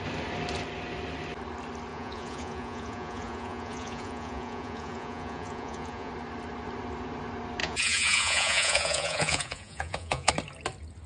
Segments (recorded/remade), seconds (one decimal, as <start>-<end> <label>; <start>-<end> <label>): 0.0-1.9 recorded; 1.9-6.1 remade; 6.1-7.6 recorded; 7.6-10.3 remade; 10.3-11.1 recorded